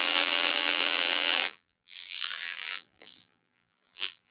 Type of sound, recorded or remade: remade